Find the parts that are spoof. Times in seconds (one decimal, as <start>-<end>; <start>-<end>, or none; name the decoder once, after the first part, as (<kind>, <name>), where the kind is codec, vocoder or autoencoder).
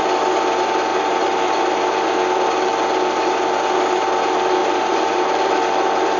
0.9-1.6 (vocoder, BigVGAN v2); 4.6-5.6